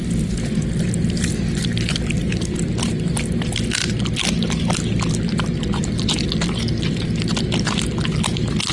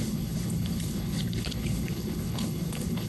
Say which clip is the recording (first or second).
first